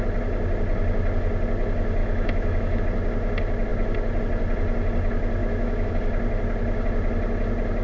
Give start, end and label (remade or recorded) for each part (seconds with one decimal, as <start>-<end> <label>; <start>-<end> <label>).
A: 0.0-2.0 recorded; 2.0-2.8 remade; 2.8-5.4 recorded; 5.4-5.9 remade; 5.9-7.8 recorded